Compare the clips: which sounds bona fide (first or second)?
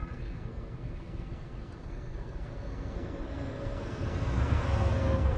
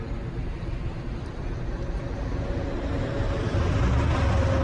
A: second